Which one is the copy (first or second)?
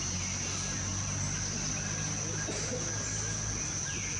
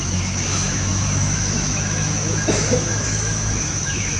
second